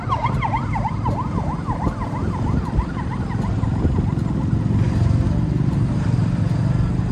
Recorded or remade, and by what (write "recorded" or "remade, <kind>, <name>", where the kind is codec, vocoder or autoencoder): recorded